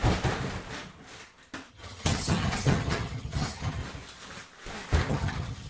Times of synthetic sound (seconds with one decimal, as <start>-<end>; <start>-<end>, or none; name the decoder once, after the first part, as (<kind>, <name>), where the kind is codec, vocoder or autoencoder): 1.7-3.8 (vocoder, HiFi-GAN); 5.1-5.7